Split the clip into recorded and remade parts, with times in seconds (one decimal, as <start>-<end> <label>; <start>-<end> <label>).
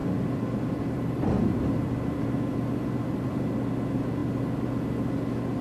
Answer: 0.0-3.4 remade; 3.4-5.6 recorded